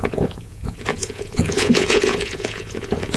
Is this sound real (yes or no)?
no